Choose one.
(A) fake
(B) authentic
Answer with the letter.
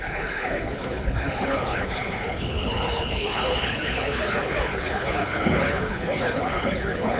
A